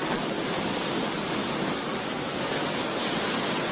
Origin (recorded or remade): recorded